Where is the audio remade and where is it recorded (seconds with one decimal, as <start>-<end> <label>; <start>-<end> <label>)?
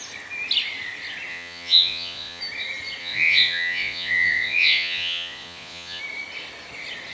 0.0-1.3 recorded; 1.3-2.4 remade; 2.4-3.0 recorded; 3.0-6.0 remade; 6.0-7.1 recorded